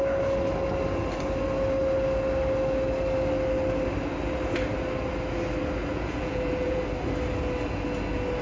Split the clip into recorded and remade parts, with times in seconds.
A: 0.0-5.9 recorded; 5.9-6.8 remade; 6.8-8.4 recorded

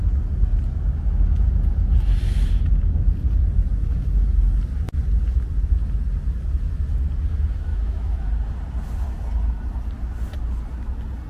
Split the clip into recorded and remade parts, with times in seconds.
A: 0.0-7.7 recorded; 7.7-8.3 remade; 8.3-11.3 recorded

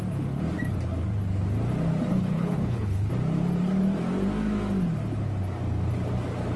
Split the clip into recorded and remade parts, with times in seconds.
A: 0.0-2.1 recorded; 2.1-3.1 remade; 3.1-6.6 recorded